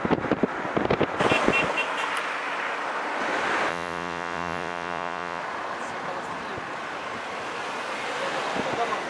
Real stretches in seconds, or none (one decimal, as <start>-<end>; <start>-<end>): 0.0-3.7; 5.4-9.1